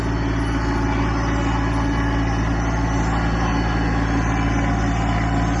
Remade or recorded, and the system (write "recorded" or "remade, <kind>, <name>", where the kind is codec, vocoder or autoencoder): recorded